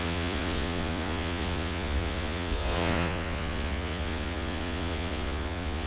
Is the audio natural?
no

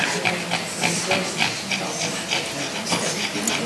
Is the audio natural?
yes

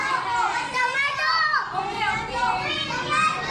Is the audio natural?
yes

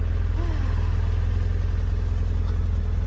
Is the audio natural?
yes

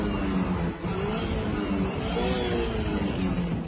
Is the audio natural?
yes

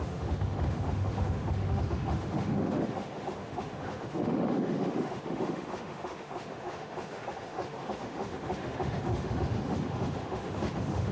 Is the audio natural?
no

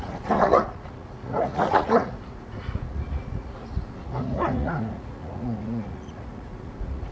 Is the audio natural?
no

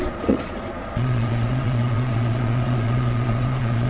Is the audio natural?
no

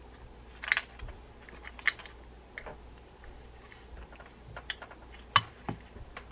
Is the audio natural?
yes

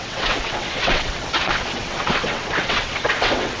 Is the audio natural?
no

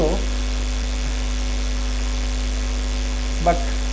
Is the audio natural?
yes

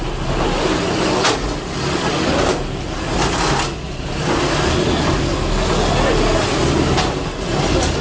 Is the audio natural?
yes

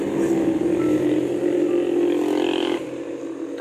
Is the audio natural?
yes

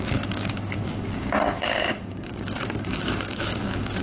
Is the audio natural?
no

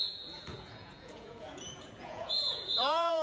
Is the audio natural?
no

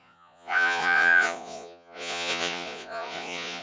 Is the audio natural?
no